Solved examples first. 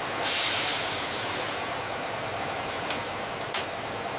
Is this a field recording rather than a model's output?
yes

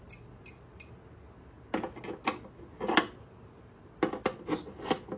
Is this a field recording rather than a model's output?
yes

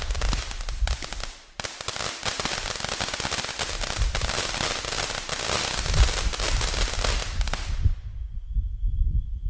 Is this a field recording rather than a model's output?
yes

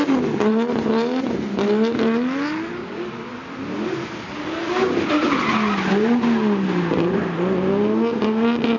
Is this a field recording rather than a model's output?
yes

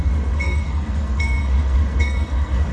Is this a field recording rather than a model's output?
no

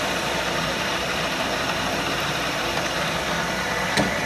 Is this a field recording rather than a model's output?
no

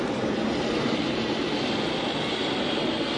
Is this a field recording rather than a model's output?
yes